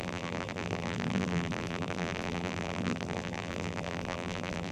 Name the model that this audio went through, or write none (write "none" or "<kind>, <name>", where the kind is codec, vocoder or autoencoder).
vocoder, BigVGAN v2